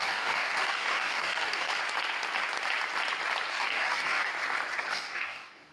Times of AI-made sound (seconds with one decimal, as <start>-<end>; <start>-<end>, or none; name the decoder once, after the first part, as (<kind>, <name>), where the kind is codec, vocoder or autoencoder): 0.0-1.7 (codec, DAC); 3.5-4.3; 4.9-5.7